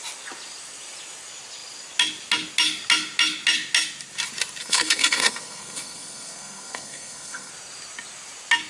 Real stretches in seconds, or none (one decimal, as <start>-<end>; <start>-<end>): 0.0-4.6; 7.5-8.7